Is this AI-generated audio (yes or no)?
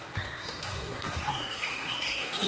yes